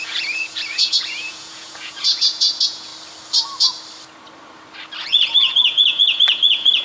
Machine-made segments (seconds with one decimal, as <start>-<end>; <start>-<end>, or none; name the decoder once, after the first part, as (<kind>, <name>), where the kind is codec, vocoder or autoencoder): 0.0-2.9 (vocoder, Vocos); 5.0-6.8

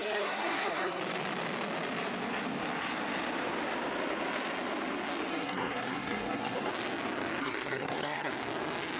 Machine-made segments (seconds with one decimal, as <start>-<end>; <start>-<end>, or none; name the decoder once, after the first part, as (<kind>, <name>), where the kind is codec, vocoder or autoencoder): 0.0-1.0 (codec, SNAC); 5.3-6.7; 7.4-8.3

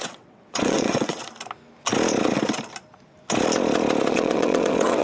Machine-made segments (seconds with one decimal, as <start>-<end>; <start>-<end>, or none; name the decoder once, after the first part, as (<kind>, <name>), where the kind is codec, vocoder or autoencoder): 0.0-1.2 (vocoder, WaveNeXt); 4.1-5.0

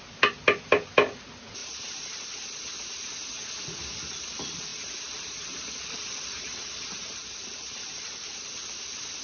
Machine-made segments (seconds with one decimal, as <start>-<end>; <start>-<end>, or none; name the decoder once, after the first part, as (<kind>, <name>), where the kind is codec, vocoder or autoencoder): 1.6-3.1 (vocoder, BigVGAN v2); 4.7-8.5

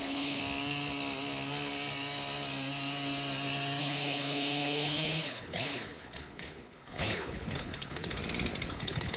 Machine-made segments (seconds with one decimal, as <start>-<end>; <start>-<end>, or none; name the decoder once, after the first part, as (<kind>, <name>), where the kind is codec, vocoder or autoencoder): 0.0-0.4 (codec, HILCodec); 3.8-8.2; 8.7-9.2

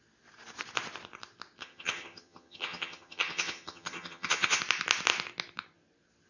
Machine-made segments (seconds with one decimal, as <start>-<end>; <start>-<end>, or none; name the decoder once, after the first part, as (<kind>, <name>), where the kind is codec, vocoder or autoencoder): 1.6-4.6 (vocoder, HiFi-GAN)

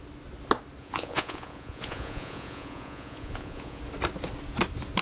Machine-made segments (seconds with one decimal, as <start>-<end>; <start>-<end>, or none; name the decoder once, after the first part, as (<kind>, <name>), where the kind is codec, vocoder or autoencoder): 0.8-3.8 (vocoder, Vocos)

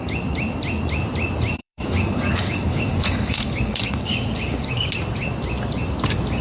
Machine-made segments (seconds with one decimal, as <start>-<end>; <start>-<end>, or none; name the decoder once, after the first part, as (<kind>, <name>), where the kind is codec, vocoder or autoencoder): 1.6-4.9 (codec, DAC)